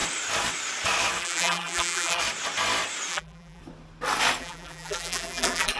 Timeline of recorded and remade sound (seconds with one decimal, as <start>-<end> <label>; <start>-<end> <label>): 0.0-1.2 recorded; 1.2-2.2 remade; 2.2-3.1 recorded; 3.1-3.6 remade; 3.6-4.4 recorded; 4.4-5.8 remade